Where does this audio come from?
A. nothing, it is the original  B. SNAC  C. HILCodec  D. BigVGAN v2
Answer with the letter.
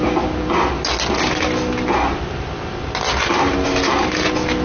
A